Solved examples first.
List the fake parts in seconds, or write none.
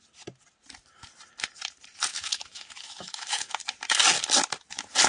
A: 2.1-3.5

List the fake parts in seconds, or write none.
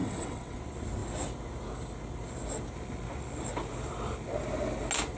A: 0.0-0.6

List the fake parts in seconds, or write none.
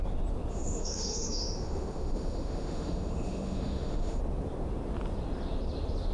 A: 0.5-4.2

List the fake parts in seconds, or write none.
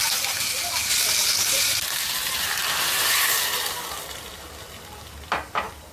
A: 0.8-1.8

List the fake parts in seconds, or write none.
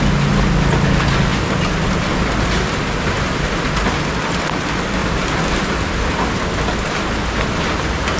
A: 5.0-6.2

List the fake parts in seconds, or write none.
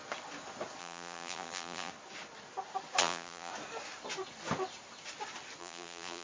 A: 0.8-1.9; 3.0-3.5; 5.6-6.2